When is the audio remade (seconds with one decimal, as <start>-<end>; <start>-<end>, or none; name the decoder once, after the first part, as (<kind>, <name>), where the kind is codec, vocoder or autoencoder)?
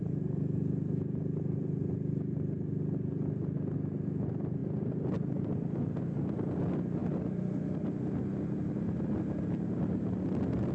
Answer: none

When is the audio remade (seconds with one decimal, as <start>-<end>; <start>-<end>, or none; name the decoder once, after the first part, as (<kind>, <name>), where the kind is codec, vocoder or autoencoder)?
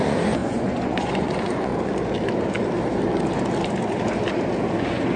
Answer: 0.0-1.7 (vocoder, Vocos); 4.8-5.2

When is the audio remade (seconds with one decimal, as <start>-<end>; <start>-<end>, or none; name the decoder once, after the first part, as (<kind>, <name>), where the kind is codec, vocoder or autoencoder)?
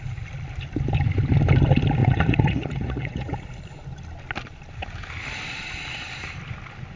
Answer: 2.0-3.5 (vocoder, Vocos)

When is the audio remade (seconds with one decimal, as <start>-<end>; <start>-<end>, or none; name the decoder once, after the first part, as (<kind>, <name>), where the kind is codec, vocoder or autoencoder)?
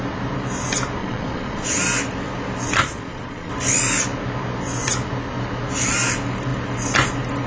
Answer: 1.0-1.8 (vocoder, Vocos); 2.8-3.5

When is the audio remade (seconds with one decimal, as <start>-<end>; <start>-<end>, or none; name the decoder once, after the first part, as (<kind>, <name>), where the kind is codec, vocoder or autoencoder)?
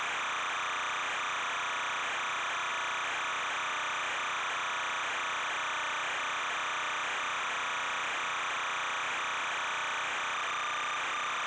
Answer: none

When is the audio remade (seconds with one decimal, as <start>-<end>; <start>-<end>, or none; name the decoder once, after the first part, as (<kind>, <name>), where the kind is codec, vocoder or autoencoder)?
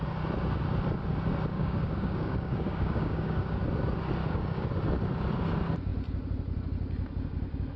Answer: 1.5-3.6 (codec, DAC); 4.2-4.7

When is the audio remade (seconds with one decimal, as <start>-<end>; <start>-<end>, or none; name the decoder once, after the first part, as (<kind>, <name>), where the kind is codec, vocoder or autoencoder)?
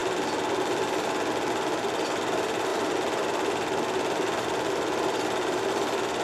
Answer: none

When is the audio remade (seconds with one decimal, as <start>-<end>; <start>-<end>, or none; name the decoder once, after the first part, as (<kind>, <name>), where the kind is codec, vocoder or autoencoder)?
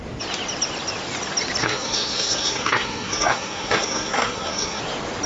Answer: 1.6-4.8 (codec, SNAC)